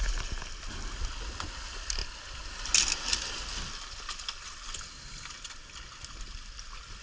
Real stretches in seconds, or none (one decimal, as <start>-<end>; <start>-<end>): 0.0-7.0